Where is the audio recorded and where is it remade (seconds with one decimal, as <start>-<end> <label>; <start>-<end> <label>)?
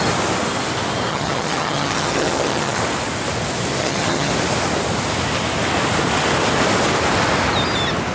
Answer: 0.0-1.1 recorded; 1.1-2.8 remade; 2.8-3.8 recorded; 3.8-4.3 remade; 4.3-8.1 recorded